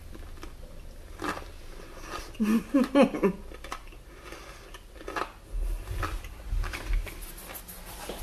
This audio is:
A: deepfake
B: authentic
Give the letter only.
B